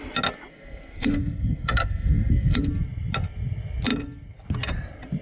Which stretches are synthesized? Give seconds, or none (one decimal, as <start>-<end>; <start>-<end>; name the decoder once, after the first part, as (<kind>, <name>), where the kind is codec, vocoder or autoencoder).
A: 0.5-2.7 (codec, SNAC)